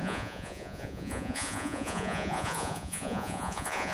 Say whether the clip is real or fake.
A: fake